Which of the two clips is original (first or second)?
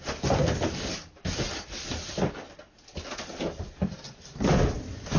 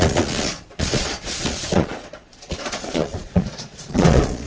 first